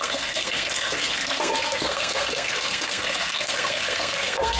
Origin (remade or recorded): remade